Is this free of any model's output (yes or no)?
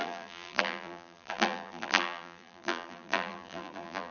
no